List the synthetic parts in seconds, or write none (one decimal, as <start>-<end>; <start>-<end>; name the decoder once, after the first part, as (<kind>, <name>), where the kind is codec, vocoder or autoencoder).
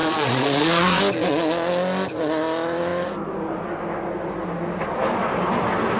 0.0-1.0 (vocoder, Vocos)